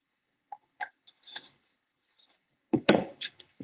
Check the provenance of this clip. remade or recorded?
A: remade